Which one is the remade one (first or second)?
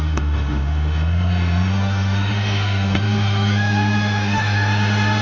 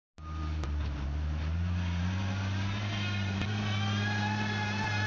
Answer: first